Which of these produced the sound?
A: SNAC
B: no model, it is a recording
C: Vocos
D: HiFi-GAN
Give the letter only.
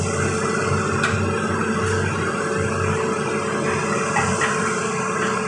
B